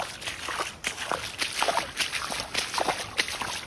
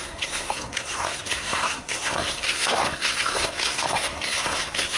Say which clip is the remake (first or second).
second